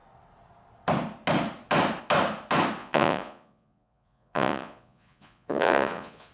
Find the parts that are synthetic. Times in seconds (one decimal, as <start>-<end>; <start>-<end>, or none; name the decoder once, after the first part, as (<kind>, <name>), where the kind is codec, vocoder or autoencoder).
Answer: 2.8-6.3 (vocoder, Vocos)

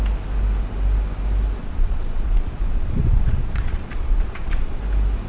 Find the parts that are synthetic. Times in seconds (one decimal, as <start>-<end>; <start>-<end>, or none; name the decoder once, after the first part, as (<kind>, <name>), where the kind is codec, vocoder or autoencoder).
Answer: 1.6-4.8 (vocoder, Vocos)

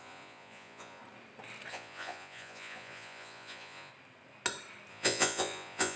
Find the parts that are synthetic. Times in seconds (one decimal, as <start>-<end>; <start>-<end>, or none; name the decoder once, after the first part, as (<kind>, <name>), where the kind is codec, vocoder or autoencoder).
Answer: 0.0-1.0 (vocoder, Vocos); 1.7-3.9; 4.9-6.0

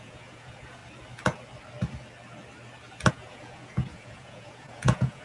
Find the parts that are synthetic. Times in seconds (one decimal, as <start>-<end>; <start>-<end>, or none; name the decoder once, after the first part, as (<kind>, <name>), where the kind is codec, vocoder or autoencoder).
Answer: 0.0-0.8 (vocoder, Vocos); 3.1-5.2